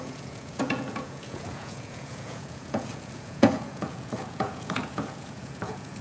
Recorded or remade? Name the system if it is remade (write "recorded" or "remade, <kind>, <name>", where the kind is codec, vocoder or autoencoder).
remade, vocoder, Vocos